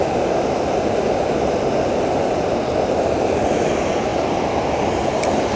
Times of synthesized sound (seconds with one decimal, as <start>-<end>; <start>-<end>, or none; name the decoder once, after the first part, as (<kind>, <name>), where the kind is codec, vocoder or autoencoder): 0.0-5.6 (vocoder, BigVGAN v2)